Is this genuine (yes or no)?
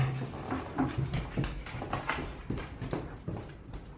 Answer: yes